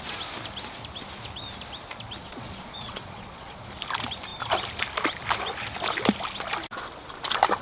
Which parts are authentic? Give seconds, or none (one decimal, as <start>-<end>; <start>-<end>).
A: 0.0-2.2; 3.7-7.6

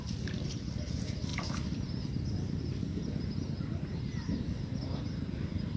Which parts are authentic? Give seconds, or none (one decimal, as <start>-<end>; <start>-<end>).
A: 0.0-5.8